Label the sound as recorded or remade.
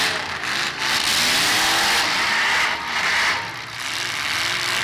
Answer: recorded